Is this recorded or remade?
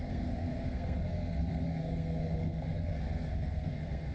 remade